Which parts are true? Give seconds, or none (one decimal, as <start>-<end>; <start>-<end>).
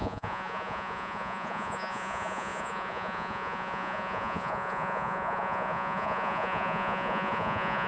none